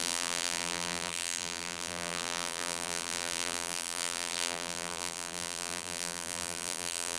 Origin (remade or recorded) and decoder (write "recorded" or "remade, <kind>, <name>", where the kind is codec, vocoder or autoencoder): remade, vocoder, BigVGAN v2